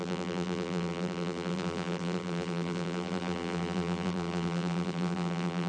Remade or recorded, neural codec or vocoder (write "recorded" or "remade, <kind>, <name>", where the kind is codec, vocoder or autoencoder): remade, vocoder, BigVGAN v2